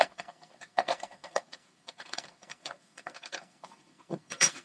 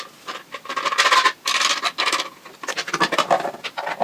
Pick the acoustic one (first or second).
second